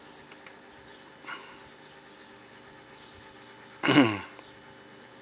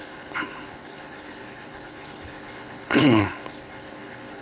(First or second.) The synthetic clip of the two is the second